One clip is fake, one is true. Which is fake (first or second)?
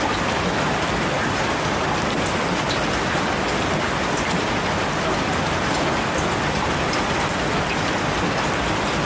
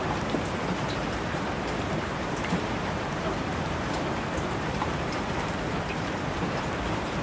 second